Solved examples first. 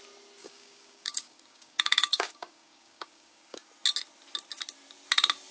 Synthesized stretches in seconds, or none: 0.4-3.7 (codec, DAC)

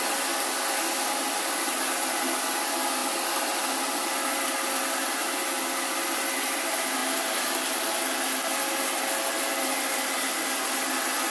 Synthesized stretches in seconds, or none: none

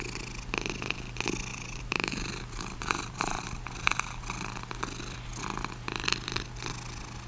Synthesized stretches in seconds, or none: 1.5-4.2 (vocoder, BigVGAN v2)

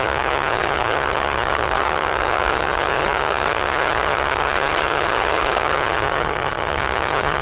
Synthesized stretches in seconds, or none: 0.0-7.4 (vocoder, HiFi-GAN)

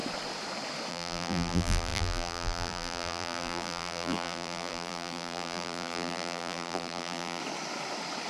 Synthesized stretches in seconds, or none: 0.9-7.4 (vocoder, BigVGAN v2)